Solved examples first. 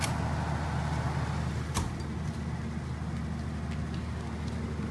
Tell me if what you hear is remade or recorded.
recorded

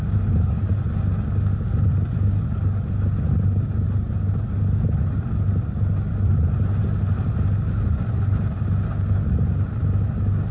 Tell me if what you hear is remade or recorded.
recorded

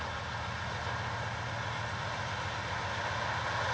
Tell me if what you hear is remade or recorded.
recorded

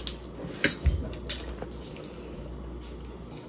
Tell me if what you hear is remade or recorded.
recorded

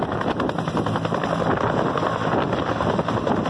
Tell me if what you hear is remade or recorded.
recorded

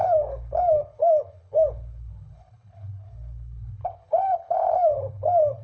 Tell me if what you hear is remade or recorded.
remade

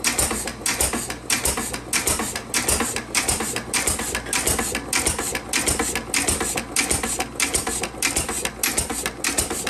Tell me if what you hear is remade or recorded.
recorded